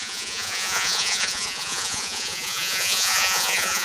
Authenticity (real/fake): fake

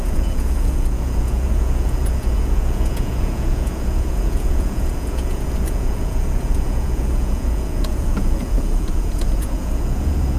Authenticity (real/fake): fake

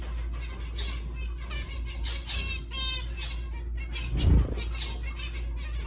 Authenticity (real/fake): real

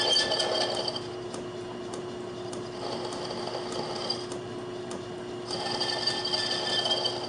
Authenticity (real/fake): real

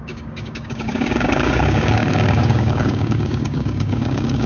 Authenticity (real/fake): fake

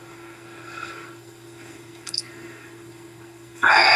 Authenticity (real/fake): fake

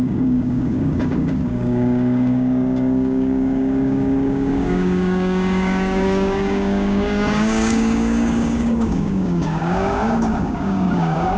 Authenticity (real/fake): fake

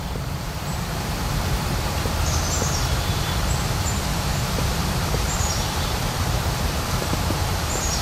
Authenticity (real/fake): fake